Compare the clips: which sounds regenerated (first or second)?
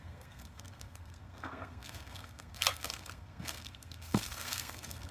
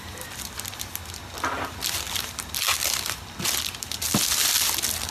first